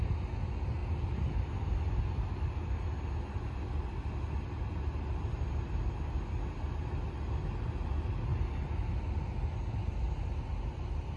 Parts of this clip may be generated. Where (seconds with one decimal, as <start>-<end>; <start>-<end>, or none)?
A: none